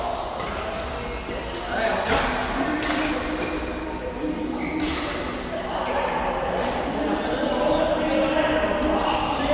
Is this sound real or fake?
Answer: real